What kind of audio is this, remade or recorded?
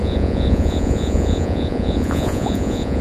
remade